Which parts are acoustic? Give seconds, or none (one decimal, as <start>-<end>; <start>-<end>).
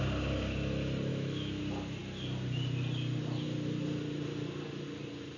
0.0-1.1; 1.6-5.4